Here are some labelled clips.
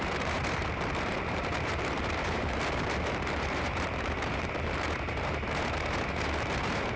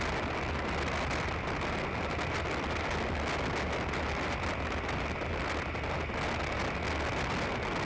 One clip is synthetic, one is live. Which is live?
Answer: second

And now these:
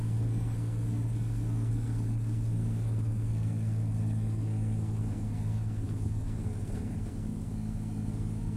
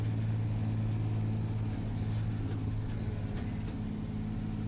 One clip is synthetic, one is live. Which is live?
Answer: second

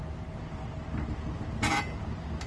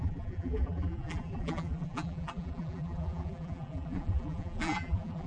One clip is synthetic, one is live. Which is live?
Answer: first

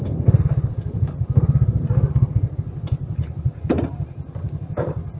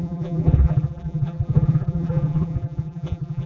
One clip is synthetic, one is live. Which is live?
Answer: first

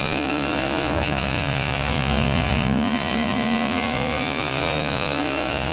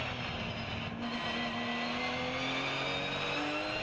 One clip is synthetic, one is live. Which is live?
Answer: second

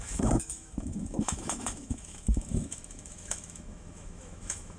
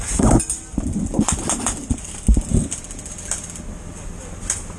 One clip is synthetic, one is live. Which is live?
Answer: second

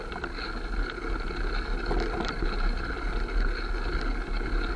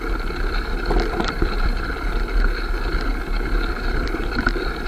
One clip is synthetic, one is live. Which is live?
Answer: first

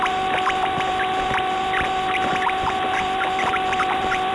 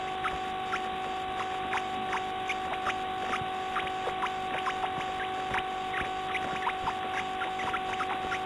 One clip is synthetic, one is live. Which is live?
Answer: second